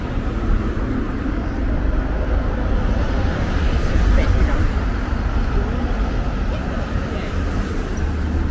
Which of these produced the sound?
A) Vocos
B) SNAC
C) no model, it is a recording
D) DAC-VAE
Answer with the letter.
C